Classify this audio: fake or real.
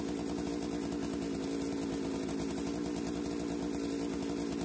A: real